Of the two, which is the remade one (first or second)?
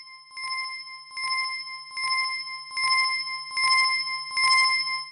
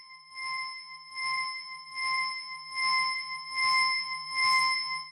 second